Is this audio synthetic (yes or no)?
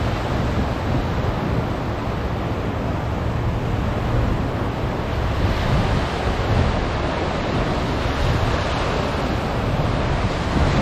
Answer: no